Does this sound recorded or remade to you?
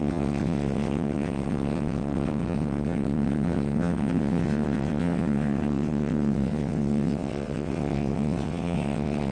remade